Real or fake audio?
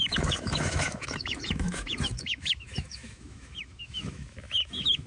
fake